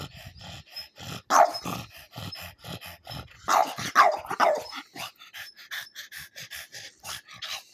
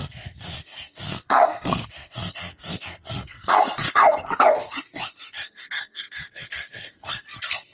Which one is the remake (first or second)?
second